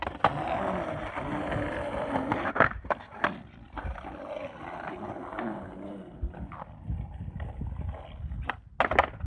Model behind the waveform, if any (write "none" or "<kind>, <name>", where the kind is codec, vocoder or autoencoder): none